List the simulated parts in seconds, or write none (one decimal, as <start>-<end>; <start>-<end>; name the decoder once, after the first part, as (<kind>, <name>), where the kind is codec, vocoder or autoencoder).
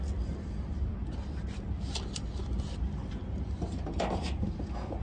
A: none